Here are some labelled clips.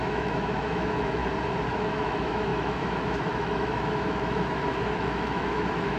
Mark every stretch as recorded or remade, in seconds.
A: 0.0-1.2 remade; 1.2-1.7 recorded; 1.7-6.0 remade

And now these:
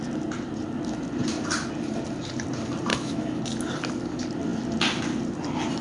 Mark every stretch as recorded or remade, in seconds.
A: 0.0-2.9 recorded; 2.9-3.4 remade; 3.4-5.8 recorded

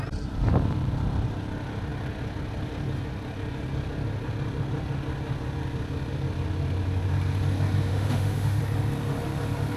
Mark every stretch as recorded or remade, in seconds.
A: 0.0-7.9 recorded; 7.9-8.6 remade; 8.6-9.8 recorded

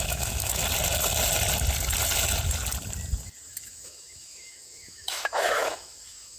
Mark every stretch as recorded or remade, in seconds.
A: 0.0-0.6 remade; 0.6-3.5 recorded; 3.5-6.4 remade